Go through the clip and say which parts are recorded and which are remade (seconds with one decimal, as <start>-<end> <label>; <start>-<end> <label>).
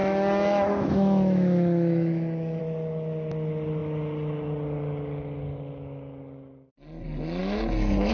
0.0-2.6 remade; 2.6-8.1 recorded